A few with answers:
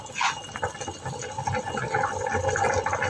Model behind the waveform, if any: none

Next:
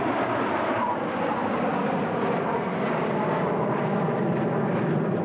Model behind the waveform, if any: none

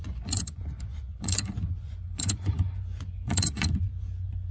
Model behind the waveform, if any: vocoder, Vocos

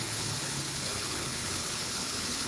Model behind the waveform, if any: codec, HILCodec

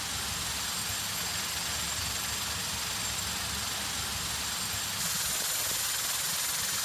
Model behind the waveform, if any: none